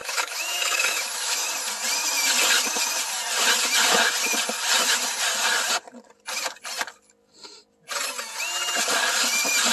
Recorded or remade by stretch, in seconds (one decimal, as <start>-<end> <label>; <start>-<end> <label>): 0.0-1.5 remade; 1.5-9.7 recorded